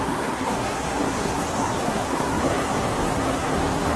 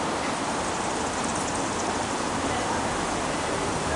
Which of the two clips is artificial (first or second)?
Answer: first